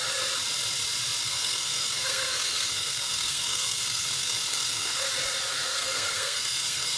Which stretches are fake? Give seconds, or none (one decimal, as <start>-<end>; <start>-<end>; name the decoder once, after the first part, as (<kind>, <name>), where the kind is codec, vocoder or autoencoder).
1.2-5.1 (codec, SNAC); 5.5-7.0